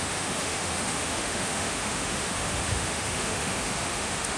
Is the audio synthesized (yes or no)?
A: yes